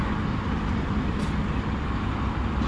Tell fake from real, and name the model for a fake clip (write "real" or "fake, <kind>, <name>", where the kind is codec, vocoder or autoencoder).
real